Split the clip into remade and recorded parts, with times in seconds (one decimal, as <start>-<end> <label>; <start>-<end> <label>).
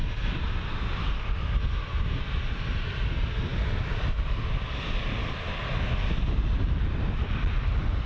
0.0-8.1 recorded